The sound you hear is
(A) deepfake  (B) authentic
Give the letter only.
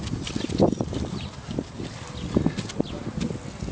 B